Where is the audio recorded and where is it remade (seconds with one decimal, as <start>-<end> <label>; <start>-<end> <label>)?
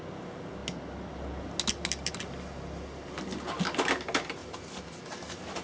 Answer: 0.0-5.6 recorded